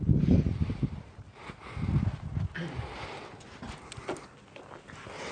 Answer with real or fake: real